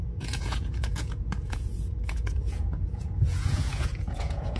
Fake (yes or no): yes